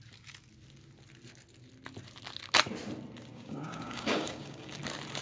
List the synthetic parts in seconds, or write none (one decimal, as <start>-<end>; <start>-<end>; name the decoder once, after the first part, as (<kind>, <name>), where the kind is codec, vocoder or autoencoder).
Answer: 3.3-4.8 (codec, DAC)